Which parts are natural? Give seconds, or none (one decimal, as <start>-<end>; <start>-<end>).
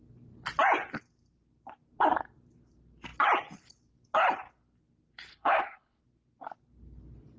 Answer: 0.0-5.3; 6.0-7.4